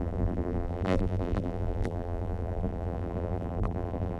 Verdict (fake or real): fake